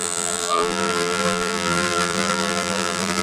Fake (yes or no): yes